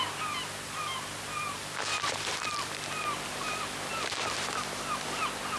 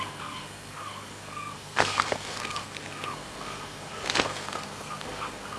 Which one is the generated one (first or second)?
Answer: second